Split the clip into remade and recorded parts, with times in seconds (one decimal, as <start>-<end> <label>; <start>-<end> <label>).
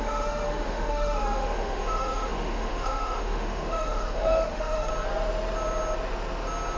0.0-4.9 remade; 4.9-6.8 recorded